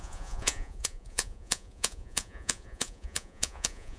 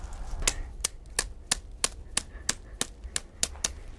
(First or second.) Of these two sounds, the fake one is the first